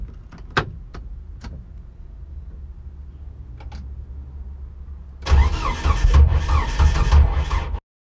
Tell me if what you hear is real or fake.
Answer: real